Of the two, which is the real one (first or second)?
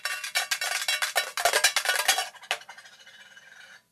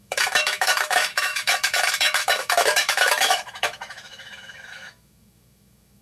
first